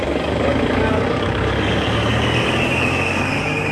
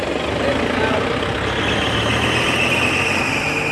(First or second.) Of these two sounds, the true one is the second